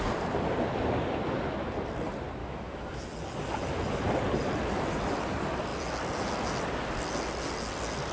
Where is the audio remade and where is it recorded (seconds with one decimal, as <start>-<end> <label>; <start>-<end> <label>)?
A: 0.0-2.4 recorded; 2.4-3.0 remade; 3.0-8.1 recorded